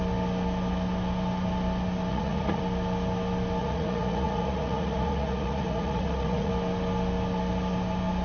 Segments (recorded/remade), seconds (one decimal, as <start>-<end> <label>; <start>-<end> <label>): 0.0-2.1 recorded; 2.1-2.6 remade; 2.6-3.6 recorded; 3.6-6.5 remade; 6.5-8.2 recorded